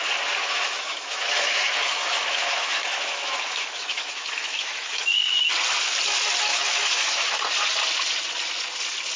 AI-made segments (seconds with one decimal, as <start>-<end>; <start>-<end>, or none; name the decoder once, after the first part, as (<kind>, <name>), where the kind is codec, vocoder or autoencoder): 0.4-5.5 (autoencoder, DAC-VAE); 6.5-7.4